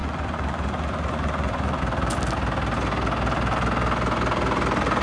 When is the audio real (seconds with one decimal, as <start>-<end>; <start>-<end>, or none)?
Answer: 1.8-5.0